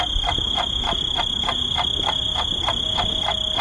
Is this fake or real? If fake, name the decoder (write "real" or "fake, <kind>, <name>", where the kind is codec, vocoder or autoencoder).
real